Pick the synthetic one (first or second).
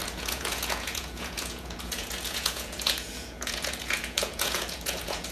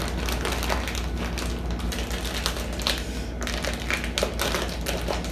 first